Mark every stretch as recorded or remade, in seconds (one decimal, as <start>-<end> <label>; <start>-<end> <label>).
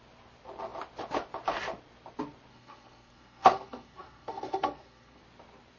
0.0-2.5 recorded; 2.5-5.2 remade; 5.2-5.8 recorded